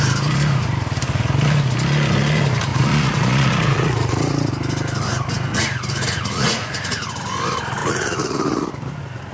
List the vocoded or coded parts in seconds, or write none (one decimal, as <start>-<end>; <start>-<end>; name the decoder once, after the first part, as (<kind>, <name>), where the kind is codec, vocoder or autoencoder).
2.7-4.5 (vocoder, Vocos); 5.5-7.1; 7.8-8.7